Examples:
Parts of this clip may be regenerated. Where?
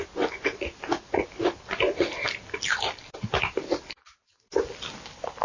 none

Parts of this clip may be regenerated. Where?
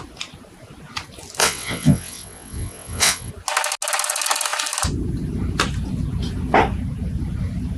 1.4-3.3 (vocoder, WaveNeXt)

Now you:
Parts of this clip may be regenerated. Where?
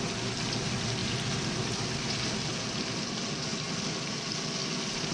none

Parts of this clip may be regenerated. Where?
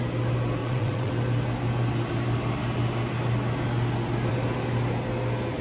0.6-1.1 (vocoder, WaveNeXt)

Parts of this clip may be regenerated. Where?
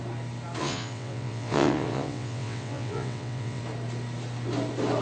0.6-3.6 (vocoder, WaveNeXt)